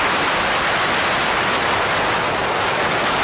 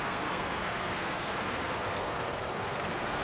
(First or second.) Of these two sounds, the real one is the first